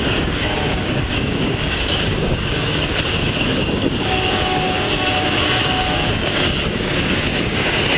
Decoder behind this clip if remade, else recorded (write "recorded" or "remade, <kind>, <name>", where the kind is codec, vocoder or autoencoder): remade, codec, DAC